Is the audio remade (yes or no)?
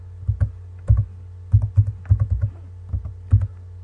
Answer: no